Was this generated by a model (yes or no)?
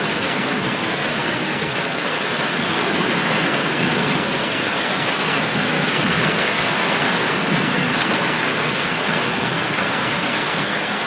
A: yes